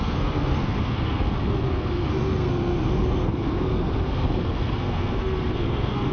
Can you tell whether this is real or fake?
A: fake